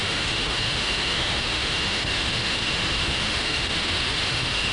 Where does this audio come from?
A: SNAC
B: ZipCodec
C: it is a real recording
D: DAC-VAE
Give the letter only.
D